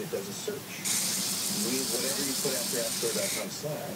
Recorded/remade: recorded